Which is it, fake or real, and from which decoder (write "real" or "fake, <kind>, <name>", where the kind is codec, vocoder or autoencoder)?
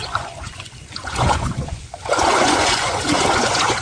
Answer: fake, vocoder, Vocos